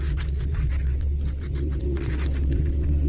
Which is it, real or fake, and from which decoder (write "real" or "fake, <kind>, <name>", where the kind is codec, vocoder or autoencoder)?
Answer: fake, vocoder, WaveNeXt